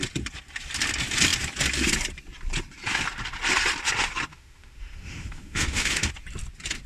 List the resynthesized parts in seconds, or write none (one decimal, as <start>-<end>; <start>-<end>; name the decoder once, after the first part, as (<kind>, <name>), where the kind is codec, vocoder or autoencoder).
4.3-6.1 (autoencoder, DAC-VAE)